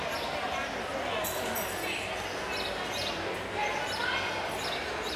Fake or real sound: real